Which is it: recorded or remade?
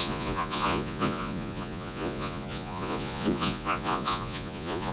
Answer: remade